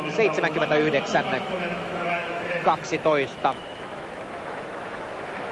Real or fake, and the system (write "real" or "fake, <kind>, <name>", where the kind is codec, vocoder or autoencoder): fake, autoencoder, DAC-VAE